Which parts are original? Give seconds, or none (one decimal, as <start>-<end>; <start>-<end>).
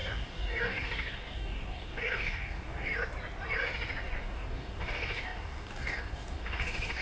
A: 2.9-4.2